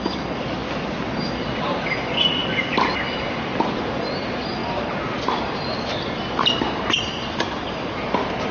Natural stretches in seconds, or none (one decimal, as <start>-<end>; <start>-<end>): 0.0-8.5